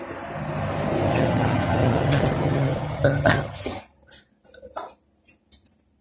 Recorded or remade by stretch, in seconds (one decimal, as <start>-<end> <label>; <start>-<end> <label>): 0.0-1.1 recorded; 1.1-3.8 remade; 3.8-6.0 recorded